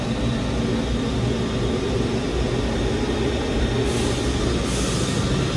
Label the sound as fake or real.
real